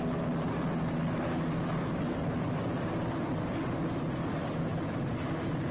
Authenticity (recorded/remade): recorded